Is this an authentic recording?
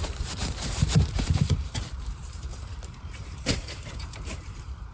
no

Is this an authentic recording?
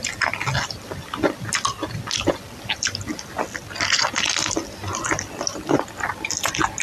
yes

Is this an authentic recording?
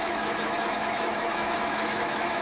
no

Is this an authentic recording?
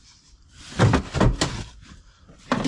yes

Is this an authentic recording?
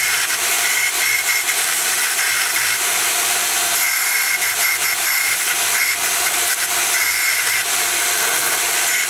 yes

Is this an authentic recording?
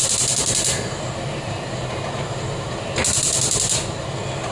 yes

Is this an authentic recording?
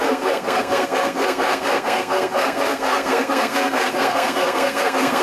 no